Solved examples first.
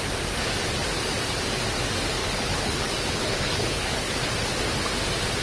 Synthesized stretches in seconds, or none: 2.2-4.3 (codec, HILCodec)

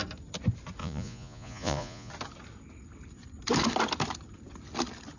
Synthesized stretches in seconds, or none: 0.8-2.1 (vocoder, Vocos)

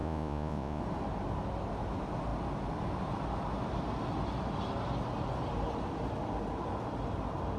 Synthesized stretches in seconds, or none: 0.0-0.8 (vocoder, Vocos)

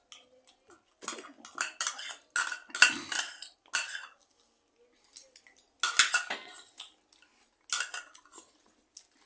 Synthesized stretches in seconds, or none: none

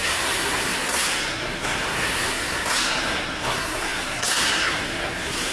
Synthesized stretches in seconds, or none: 0.0-5.5 (codec, SNAC)

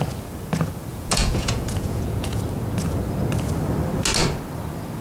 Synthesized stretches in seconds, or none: 0.9-2.4 (vocoder, Vocos)

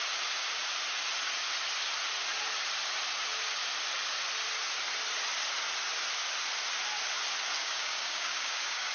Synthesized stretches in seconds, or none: 7.6-8.9 (codec, DAC)